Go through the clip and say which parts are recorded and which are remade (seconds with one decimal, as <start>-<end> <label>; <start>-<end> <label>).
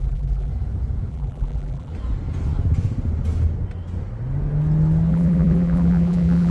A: 0.0-0.5 remade; 0.5-1.1 recorded; 1.1-1.9 remade; 1.9-5.1 recorded; 5.1-6.5 remade